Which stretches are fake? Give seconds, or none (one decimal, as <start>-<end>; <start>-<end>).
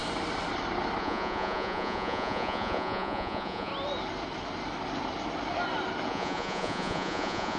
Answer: 1.0-3.7; 6.1-7.6